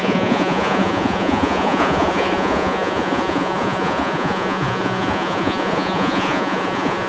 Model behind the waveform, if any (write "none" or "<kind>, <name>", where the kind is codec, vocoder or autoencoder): vocoder, Vocos